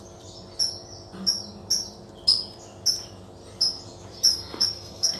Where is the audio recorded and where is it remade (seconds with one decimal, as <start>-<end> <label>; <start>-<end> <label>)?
0.0-4.3 recorded; 4.3-5.2 remade